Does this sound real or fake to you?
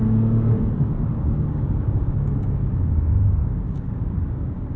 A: fake